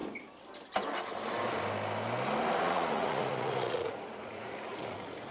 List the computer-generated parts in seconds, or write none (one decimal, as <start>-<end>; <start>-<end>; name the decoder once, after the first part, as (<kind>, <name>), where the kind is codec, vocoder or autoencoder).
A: 2.6-5.3 (vocoder, Vocos)